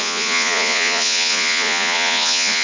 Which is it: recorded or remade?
remade